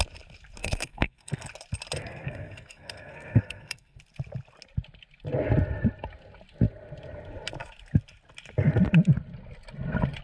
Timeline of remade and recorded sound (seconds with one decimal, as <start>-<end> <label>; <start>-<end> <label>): 0.0-0.6 recorded; 0.6-1.5 remade; 1.5-2.0 recorded; 2.0-4.0 remade; 4.0-10.2 recorded